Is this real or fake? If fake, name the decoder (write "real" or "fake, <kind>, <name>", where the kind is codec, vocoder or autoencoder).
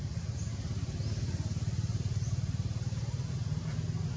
real